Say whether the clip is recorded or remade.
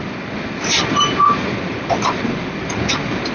recorded